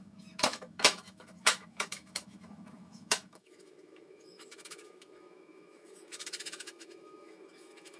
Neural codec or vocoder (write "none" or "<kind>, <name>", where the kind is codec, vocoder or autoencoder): autoencoder, DAC-VAE